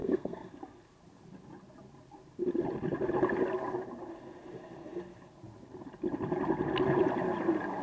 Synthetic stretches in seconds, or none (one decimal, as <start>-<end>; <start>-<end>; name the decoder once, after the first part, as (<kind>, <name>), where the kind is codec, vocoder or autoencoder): 0.0-0.5 (codec, SNAC)